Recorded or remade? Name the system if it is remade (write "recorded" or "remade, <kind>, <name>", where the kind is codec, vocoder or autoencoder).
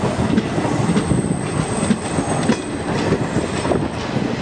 recorded